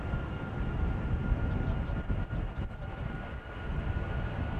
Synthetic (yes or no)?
no